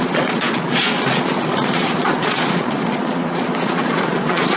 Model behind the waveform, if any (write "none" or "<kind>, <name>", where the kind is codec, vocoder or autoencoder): vocoder, Vocos